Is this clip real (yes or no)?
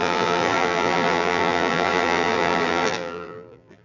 no